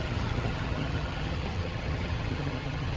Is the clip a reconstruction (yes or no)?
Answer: yes